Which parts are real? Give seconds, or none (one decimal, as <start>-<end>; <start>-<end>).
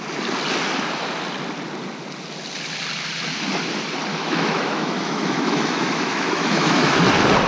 0.0-4.1; 7.0-7.5